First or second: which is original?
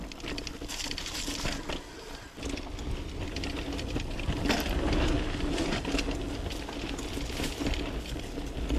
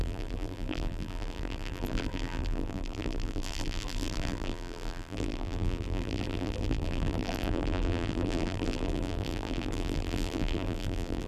first